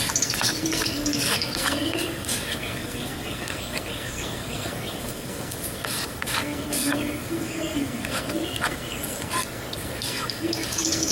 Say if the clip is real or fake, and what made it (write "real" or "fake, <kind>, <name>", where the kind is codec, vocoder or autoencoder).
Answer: fake, codec, SNAC